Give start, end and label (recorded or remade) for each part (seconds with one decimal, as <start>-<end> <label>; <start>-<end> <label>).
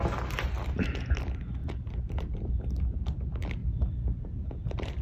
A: 0.0-1.6 recorded; 1.6-2.4 remade; 2.4-3.6 recorded; 3.6-5.0 remade